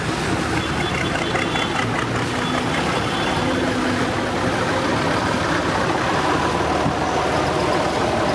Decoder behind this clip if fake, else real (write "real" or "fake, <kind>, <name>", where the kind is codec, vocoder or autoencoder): real